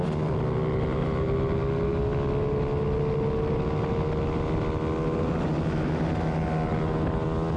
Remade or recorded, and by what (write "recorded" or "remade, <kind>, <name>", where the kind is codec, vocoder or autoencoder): recorded